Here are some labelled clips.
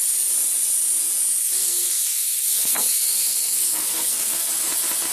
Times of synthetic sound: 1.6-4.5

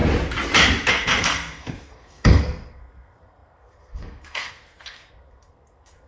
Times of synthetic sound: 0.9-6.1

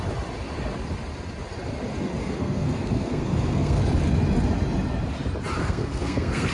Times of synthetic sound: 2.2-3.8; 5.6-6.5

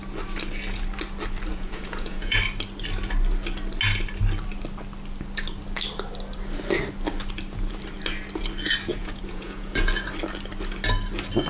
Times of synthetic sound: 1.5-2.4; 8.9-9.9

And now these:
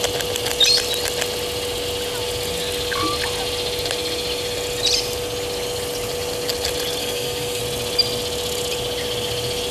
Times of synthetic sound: 7.0-7.6